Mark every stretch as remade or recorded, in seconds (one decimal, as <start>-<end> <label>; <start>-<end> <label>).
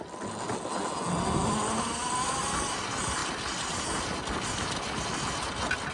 0.0-5.9 recorded